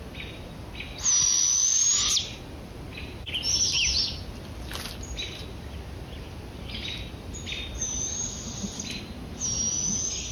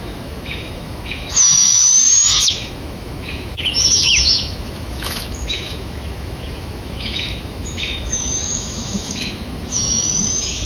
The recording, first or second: first